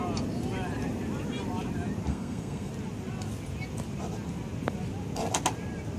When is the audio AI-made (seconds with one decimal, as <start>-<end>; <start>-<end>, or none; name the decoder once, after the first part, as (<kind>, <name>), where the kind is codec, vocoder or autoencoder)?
2.1-2.7 (codec, SNAC)